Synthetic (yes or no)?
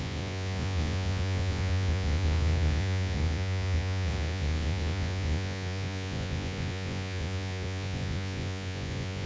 yes